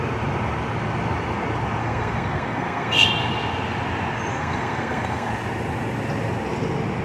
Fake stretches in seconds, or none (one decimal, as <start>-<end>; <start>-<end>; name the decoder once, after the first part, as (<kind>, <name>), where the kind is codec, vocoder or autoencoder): 1.8-3.1 (codec, SNAC); 4.3-5.3